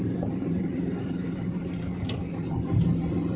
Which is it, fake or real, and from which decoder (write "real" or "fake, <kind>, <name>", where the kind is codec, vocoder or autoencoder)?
fake, vocoder, BigVGAN v2